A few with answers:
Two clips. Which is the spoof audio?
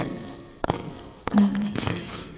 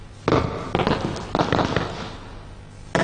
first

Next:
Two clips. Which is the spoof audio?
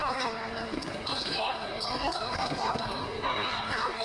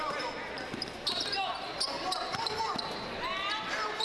first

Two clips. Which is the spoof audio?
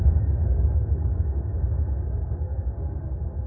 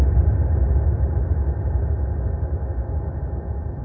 first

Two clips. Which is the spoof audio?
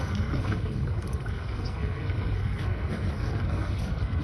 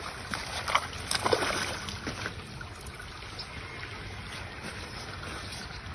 first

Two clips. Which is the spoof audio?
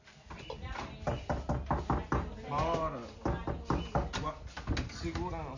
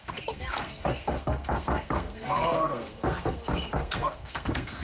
second